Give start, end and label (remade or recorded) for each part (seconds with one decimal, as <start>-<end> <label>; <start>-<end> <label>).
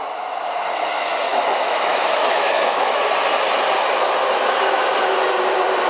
0.0-1.3 recorded; 1.3-3.0 remade; 3.0-5.9 recorded